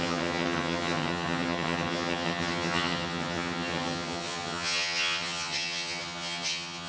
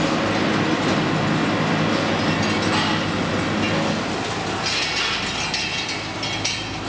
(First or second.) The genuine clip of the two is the second